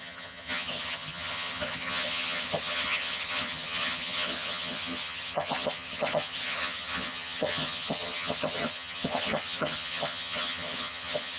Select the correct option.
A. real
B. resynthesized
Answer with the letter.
B